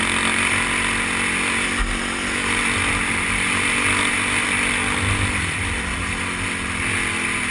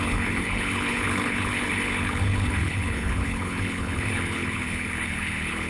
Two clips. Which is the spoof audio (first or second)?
second